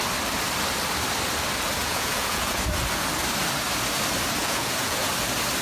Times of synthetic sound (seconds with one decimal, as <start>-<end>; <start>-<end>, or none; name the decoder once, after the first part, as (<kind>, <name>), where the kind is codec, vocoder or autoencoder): 1.8-2.6 (vocoder, Vocos); 4.4-5.1